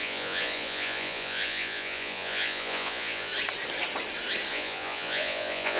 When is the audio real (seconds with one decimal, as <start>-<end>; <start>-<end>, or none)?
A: 3.3-4.5